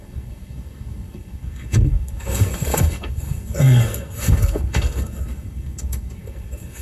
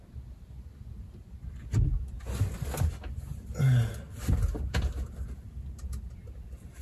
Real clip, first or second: second